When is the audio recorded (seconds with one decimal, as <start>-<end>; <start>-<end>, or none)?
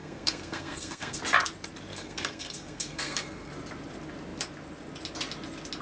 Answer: 1.2-1.9; 3.5-5.8